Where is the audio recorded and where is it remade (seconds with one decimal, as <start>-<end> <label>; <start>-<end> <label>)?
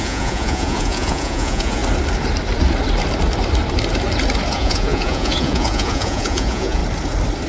0.0-1.8 remade; 1.8-4.5 recorded; 4.5-6.8 remade; 6.8-7.5 recorded